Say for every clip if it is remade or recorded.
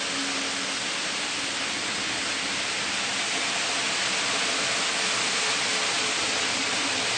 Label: recorded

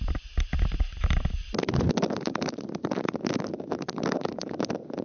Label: recorded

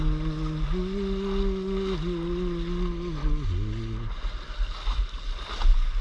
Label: recorded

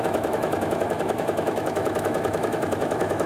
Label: remade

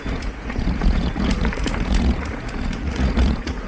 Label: remade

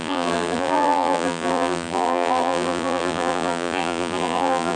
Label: remade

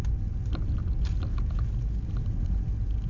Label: recorded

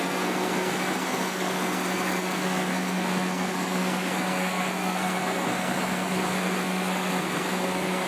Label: remade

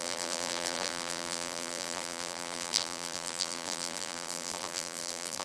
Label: remade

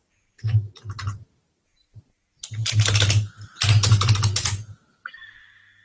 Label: recorded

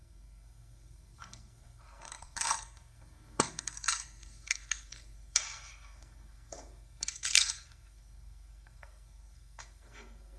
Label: remade